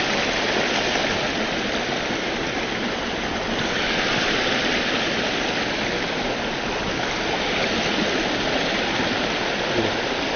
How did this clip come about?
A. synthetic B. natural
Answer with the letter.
B